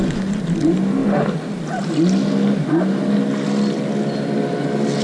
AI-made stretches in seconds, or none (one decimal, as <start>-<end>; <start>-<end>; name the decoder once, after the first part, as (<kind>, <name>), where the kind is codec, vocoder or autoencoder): none